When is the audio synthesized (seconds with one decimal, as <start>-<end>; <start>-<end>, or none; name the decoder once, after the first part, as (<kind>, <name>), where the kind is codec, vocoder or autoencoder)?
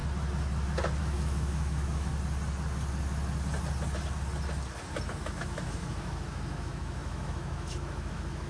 1.0-2.1 (autoencoder, DAC-VAE); 5.2-8.5